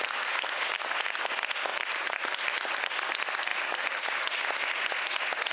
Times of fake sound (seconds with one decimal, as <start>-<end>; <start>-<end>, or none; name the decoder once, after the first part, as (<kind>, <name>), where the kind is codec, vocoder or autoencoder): 1.7-2.5 (vocoder, BigVGAN v2); 3.5-4.0